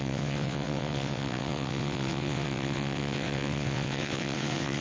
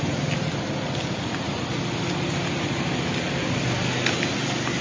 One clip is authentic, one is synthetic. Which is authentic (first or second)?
second